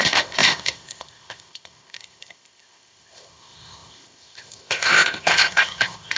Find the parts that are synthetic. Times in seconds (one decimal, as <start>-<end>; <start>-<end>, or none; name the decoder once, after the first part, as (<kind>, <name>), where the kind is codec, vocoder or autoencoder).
0.0-6.2 (codec, ZipCodec)